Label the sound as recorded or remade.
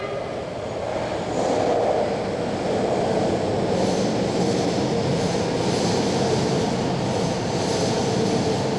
recorded